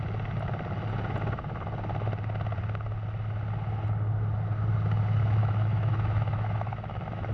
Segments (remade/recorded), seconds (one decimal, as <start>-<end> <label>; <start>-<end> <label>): 0.0-5.4 recorded; 5.4-7.3 remade